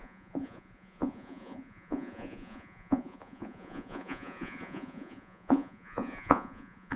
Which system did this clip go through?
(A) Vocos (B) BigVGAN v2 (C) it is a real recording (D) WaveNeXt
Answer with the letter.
A